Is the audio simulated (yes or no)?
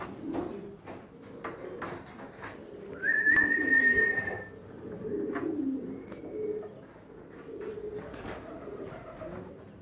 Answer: no